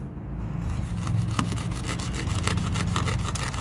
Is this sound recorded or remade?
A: recorded